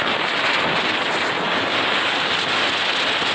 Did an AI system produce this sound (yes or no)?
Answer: no